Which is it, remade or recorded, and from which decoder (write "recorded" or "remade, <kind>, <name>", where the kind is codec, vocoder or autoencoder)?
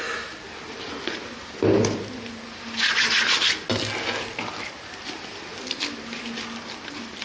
recorded